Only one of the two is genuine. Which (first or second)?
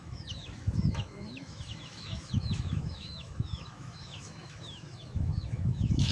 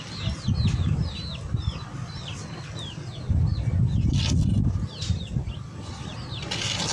second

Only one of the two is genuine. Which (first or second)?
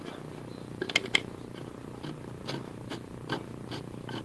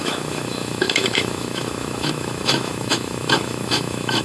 first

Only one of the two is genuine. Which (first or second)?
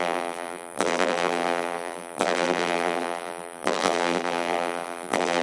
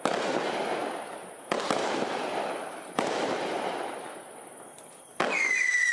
second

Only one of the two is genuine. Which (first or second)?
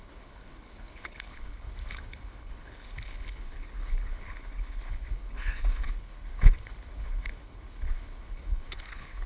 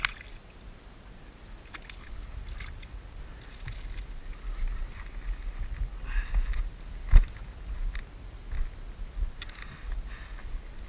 second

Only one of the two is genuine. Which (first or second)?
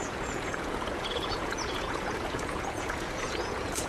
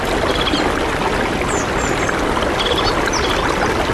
second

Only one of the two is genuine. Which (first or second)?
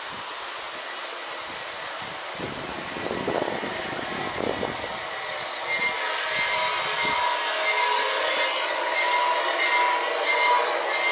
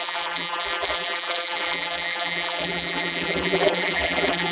first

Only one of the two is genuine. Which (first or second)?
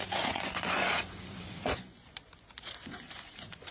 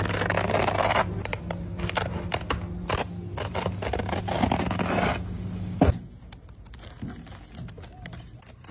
second